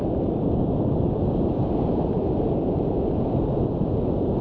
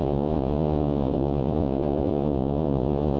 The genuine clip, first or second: first